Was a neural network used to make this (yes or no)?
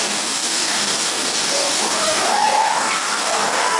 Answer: yes